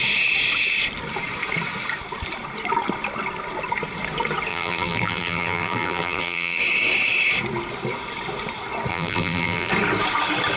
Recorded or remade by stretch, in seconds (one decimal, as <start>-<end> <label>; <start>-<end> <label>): 0.0-4.5 recorded; 4.5-6.6 remade; 6.6-8.9 recorded; 8.9-9.7 remade; 9.7-10.6 recorded

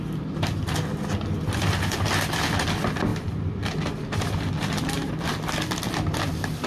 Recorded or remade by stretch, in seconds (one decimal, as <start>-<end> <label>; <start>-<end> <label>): 0.0-6.7 recorded

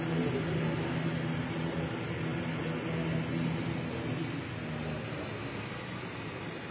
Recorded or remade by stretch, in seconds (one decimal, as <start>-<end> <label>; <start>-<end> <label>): 0.0-6.7 recorded

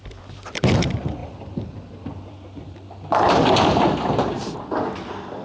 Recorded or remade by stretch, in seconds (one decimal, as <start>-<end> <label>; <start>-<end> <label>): 0.0-5.4 remade

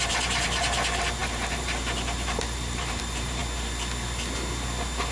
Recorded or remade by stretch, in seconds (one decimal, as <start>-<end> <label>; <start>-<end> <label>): 0.0-3.4 remade; 3.4-5.1 recorded

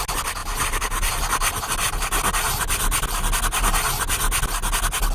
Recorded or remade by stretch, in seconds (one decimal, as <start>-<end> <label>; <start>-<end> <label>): 0.0-0.4 recorded; 0.4-1.1 remade; 1.1-5.1 recorded

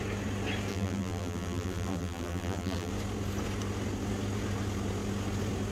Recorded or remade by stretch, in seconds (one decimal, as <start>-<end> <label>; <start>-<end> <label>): 0.0-0.7 recorded; 0.7-2.9 remade; 2.9-5.7 recorded